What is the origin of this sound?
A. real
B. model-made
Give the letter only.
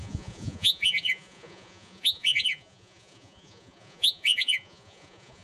B